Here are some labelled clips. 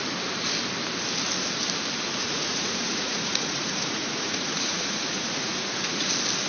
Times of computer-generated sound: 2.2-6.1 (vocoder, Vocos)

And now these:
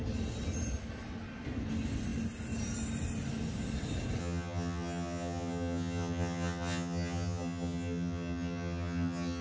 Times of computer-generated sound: 4.2-9.4 (vocoder, HiFi-GAN)

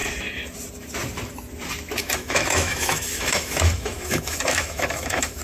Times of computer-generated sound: 2.0-5.4 (autoencoder, DAC-VAE)

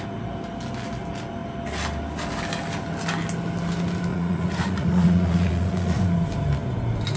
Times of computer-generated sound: 4.1-6.0 (vocoder, Vocos)

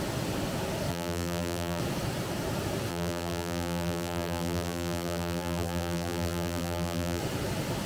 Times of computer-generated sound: 0.9-1.8 (vocoder, BigVGAN v2); 2.9-7.2

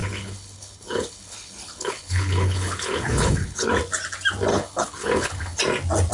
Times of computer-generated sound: 0.0-3.7 (codec, HILCodec); 4.5-5.6

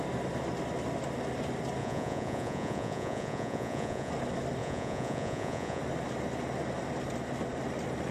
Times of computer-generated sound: 1.8-4.1 (vocoder, Vocos); 4.6-5.8